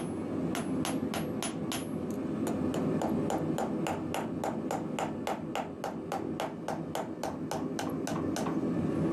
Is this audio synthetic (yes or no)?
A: no